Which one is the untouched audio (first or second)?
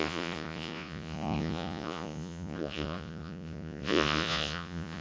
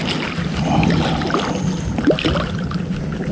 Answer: second